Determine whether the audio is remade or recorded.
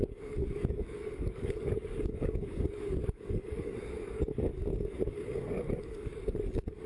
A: remade